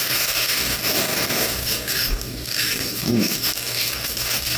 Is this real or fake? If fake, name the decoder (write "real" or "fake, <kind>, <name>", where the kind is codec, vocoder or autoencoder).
fake, codec, DAC